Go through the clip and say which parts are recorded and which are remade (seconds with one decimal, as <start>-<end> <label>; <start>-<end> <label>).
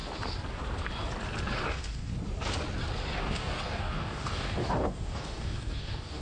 0.0-1.7 recorded; 1.7-2.1 remade; 2.1-3.2 recorded; 3.2-6.2 remade